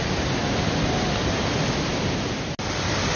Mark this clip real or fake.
real